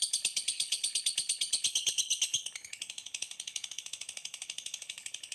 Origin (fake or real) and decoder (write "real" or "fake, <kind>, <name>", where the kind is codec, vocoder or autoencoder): fake, codec, HILCodec